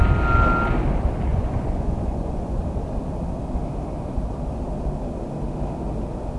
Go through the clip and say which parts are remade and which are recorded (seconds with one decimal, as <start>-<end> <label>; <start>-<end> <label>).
0.0-1.3 recorded; 1.3-2.6 remade; 2.6-6.4 recorded